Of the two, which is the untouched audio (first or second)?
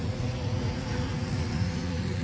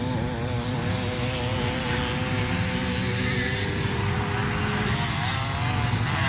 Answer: second